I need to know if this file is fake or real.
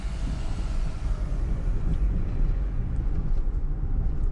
fake